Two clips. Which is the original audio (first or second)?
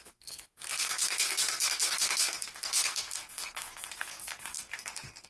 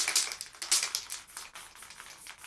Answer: second